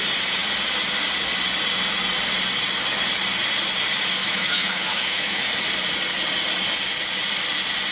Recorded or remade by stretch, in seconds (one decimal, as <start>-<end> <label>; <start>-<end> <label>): 0.0-4.2 recorded; 4.2-5.4 remade; 5.4-7.9 recorded